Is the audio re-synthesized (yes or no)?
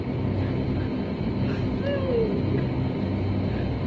no